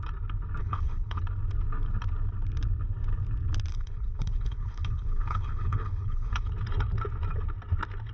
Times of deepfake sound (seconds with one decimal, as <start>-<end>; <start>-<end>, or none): 0.6-1.2; 3.7-6.5